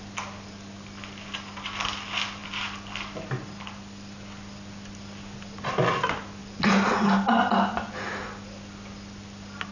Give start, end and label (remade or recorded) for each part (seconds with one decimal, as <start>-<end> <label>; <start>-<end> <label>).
0.0-9.7 recorded